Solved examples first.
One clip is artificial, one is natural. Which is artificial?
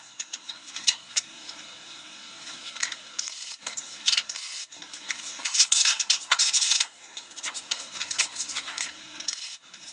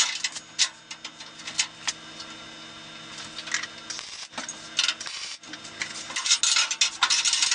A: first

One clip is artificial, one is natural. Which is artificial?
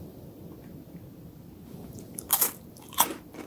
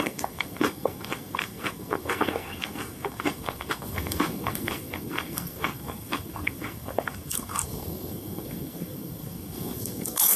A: second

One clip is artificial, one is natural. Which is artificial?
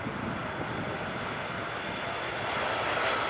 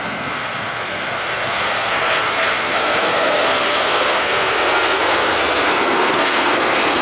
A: second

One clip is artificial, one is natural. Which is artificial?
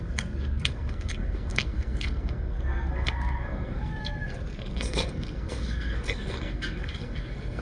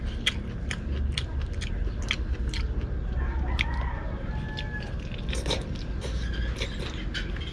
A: first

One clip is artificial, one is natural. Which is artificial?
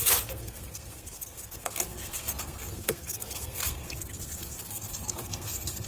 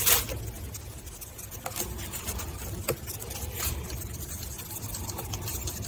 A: first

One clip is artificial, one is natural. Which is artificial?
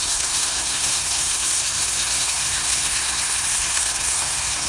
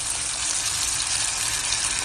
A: first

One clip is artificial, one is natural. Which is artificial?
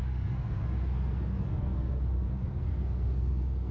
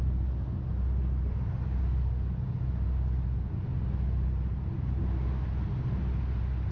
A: first